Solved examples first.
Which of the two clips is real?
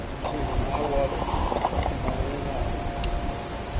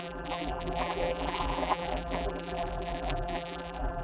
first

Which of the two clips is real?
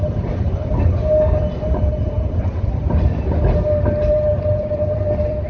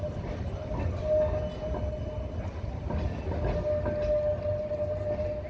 second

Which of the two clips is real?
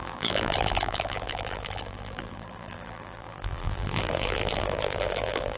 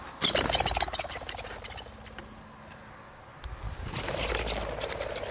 second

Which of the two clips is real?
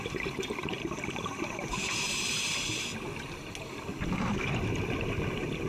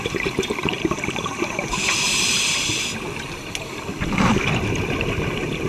first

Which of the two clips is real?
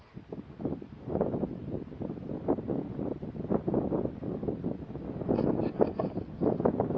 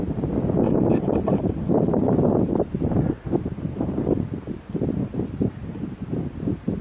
first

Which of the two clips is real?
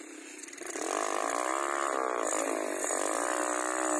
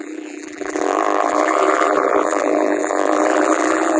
first